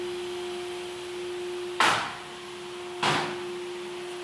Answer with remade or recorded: recorded